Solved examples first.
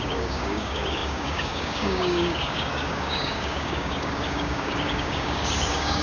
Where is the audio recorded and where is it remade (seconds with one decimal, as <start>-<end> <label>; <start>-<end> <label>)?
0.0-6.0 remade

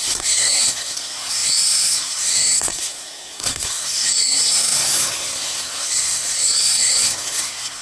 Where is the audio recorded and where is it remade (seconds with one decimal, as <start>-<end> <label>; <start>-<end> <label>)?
0.0-7.8 remade

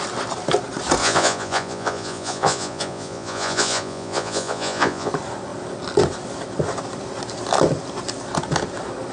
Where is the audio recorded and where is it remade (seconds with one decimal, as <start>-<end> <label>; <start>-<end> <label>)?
0.0-1.0 recorded; 1.0-5.1 remade; 5.1-9.1 recorded